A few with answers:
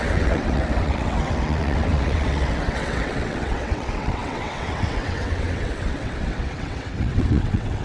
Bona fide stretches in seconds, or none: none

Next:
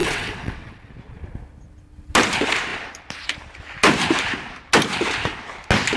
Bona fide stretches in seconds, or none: 0.9-6.0

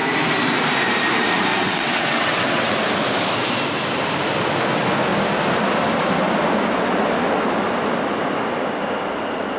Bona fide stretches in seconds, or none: 0.0-1.5; 2.8-9.6

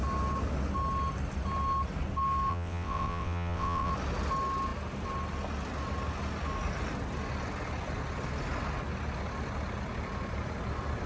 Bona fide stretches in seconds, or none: 0.0-2.5; 3.9-11.1

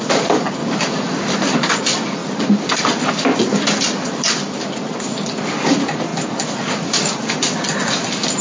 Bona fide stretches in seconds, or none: 0.0-8.4

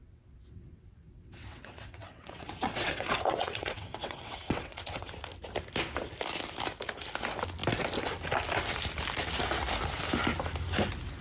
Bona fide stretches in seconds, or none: 5.1-11.2